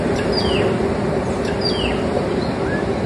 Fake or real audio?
real